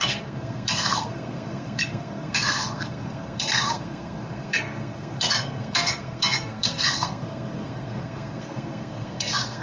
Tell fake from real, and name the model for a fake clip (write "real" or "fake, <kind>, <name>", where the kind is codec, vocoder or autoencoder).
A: fake, codec, SNAC